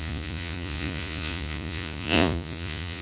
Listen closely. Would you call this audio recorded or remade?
remade